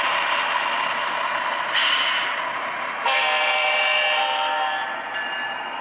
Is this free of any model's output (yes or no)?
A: yes